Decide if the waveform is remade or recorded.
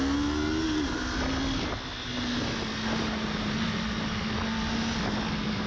recorded